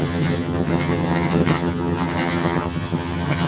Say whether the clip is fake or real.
fake